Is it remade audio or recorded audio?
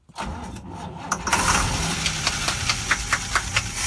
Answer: recorded